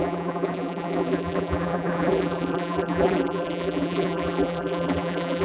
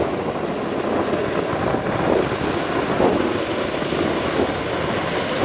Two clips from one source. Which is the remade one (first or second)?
first